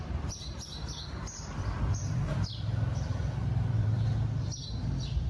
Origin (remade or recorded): remade